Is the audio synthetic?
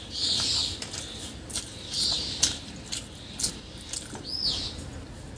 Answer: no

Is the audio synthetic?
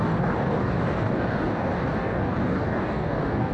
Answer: yes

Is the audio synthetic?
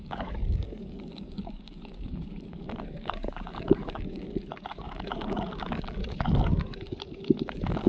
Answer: yes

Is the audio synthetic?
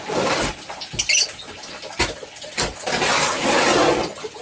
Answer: no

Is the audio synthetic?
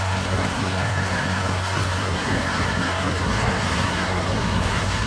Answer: yes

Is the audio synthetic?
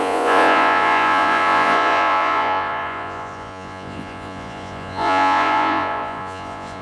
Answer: yes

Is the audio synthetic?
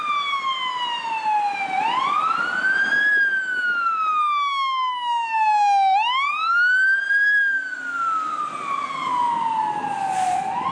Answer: no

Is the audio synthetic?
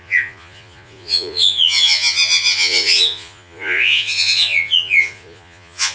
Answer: yes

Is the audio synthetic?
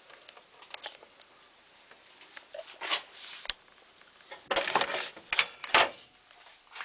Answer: no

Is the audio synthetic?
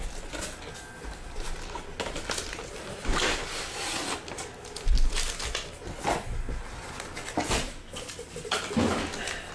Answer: no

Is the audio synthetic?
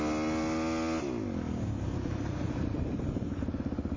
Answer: no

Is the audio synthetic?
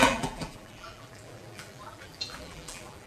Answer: yes